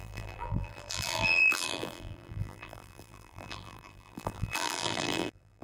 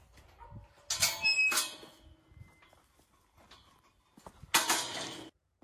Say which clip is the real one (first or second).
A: second